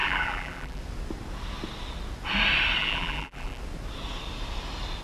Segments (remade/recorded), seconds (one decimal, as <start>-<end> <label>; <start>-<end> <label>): 0.0-0.8 remade; 0.8-2.8 recorded; 2.8-3.6 remade; 3.6-5.0 recorded